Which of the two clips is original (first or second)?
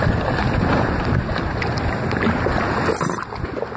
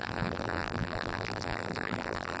first